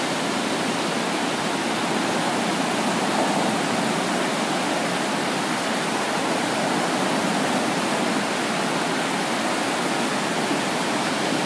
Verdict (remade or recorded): recorded